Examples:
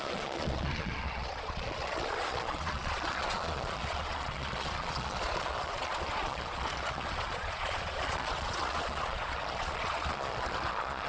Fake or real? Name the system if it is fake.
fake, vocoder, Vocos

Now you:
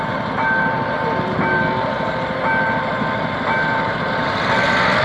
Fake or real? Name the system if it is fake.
real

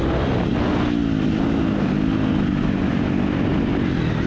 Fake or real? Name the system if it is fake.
real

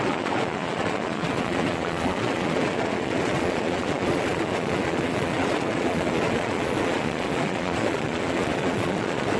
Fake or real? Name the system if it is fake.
fake, vocoder, Vocos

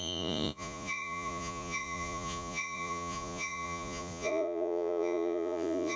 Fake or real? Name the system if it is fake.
fake, vocoder, Vocos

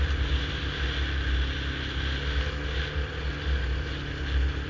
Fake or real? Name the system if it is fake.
real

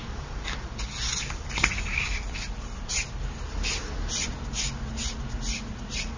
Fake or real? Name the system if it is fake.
real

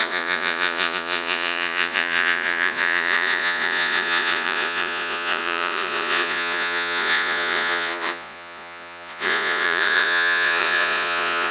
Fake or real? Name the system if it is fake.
fake, vocoder, Vocos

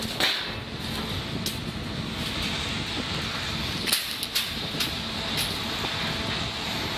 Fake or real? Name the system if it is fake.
real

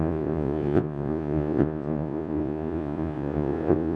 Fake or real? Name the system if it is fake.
fake, vocoder, Vocos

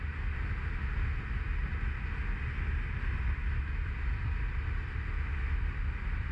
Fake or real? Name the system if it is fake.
real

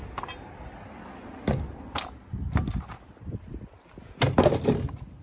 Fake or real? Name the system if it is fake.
real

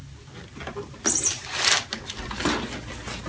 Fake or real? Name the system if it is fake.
real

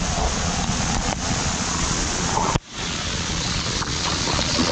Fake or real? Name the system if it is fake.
fake, vocoder, Vocos